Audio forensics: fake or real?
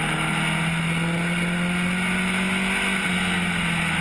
real